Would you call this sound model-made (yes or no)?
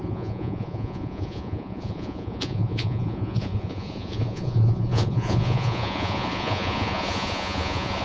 yes